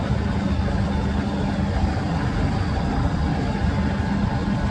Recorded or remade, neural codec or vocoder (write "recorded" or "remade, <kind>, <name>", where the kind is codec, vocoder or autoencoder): recorded